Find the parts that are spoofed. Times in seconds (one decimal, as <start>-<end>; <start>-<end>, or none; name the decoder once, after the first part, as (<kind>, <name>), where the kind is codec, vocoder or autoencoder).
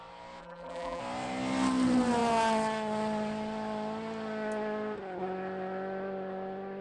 0.4-1.0 (vocoder, BigVGAN v2)